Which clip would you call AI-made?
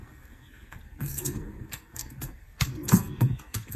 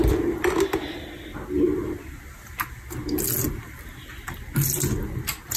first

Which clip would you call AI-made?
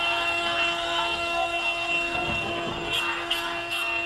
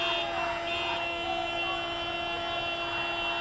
first